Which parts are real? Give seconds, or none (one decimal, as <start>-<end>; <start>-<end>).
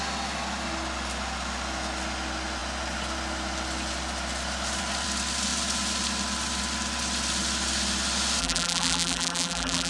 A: 0.0-8.4